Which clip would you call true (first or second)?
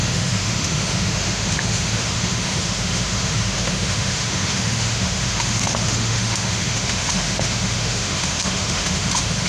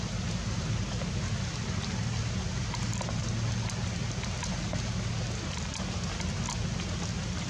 second